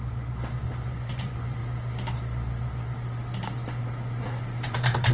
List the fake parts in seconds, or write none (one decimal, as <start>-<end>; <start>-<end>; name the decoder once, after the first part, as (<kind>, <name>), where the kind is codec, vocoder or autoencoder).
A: 0.6-1.6 (vocoder, Vocos)